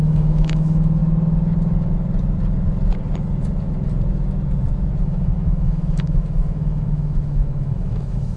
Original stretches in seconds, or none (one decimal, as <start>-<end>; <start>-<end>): 1.0-5.0